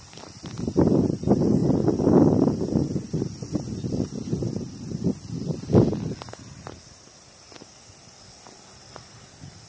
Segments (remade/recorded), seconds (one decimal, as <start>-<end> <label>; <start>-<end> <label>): 0.0-9.7 recorded